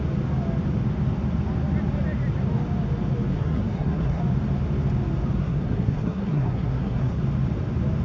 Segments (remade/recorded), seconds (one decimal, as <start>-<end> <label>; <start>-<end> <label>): 0.0-3.3 recorded; 3.3-4.2 remade; 4.2-5.4 recorded; 5.4-7.2 remade; 7.2-8.0 recorded